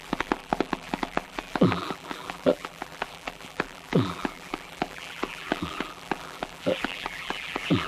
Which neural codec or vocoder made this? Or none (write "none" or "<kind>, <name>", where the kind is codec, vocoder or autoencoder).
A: vocoder, BigVGAN v2